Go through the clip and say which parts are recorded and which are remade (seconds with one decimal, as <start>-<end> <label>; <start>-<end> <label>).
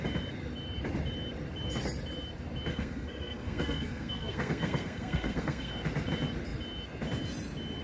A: 0.0-2.7 recorded; 2.7-5.7 remade; 5.7-7.8 recorded